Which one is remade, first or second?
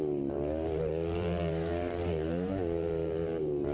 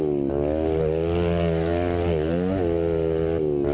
first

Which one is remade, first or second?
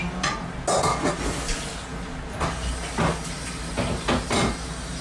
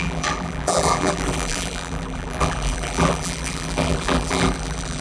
second